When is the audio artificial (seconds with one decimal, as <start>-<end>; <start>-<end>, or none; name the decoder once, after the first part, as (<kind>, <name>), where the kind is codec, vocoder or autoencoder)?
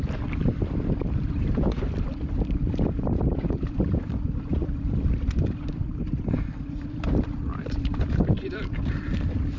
0.0-9.6 (vocoder, BigVGAN v2)